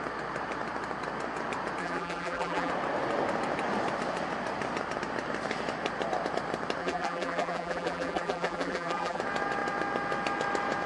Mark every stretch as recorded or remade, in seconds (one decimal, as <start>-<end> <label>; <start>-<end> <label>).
0.0-1.8 recorded; 1.8-2.7 remade; 2.7-6.8 recorded; 6.8-9.2 remade; 9.2-10.9 recorded